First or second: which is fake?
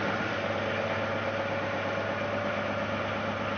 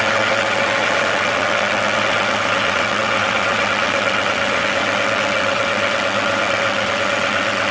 second